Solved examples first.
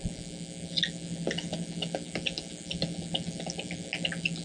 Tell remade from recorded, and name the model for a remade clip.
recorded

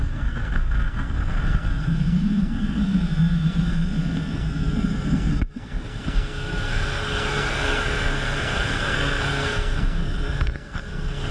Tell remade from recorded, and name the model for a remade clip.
remade, codec, SNAC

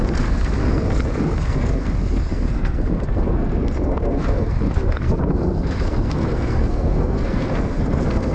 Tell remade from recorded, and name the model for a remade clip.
remade, codec, SNAC